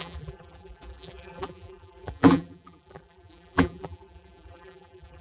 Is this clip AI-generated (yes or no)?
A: yes